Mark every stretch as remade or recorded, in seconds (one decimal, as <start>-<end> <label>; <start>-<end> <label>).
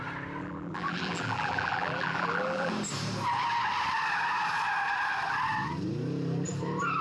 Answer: 0.0-0.4 recorded; 0.4-2.7 remade; 2.7-7.0 recorded